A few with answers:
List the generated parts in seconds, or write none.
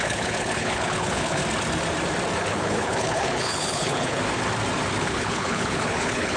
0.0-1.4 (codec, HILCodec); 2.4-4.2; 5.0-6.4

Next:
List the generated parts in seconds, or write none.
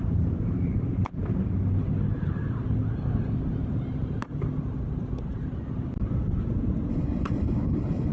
6.9-8.1 (codec, HILCodec)